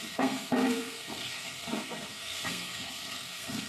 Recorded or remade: remade